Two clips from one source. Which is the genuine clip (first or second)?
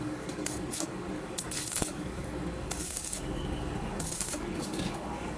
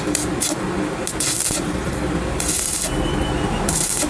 second